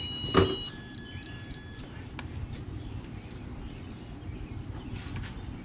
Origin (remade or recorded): recorded